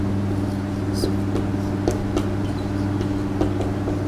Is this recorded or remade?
recorded